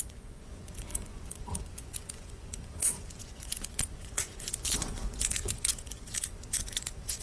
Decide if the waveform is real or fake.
fake